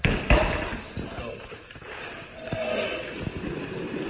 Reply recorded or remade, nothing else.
recorded